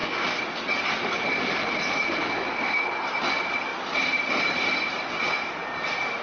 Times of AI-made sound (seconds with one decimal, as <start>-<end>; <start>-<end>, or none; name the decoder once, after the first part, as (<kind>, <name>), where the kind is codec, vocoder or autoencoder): 0.0-5.6 (vocoder, BigVGAN v2)